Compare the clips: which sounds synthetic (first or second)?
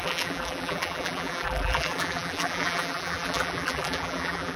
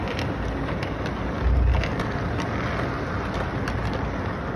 first